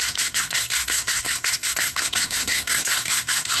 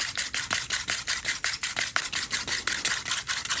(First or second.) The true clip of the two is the second